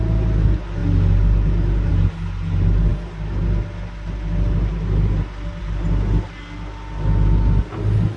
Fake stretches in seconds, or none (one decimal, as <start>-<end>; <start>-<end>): none